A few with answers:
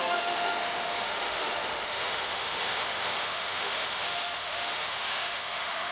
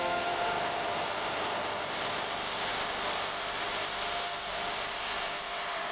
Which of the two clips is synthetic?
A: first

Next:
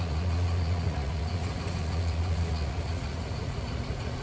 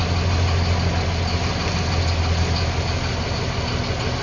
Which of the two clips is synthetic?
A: first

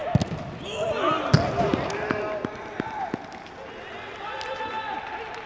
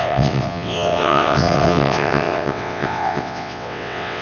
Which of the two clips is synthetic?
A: second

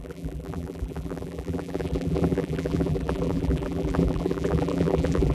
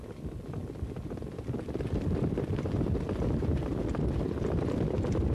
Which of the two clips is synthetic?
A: first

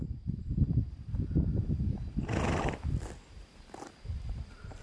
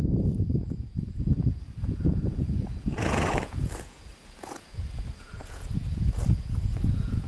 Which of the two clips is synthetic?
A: second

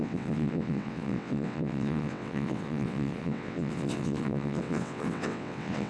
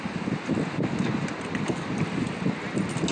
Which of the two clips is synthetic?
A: first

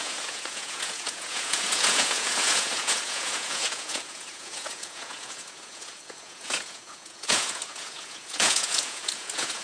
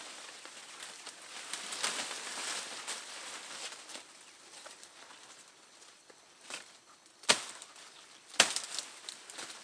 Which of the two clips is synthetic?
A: first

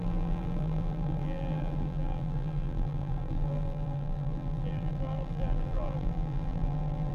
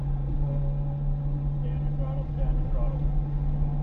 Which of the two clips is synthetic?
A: first